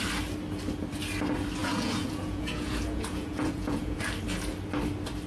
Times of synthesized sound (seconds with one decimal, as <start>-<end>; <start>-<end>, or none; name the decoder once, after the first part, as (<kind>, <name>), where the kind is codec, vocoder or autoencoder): 1.6-4.0 (vocoder, Vocos)